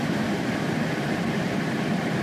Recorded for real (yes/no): yes